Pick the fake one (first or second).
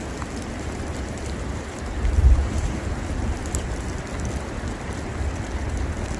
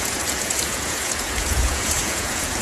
second